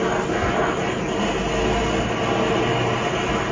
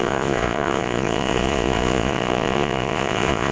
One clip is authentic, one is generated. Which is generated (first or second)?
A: second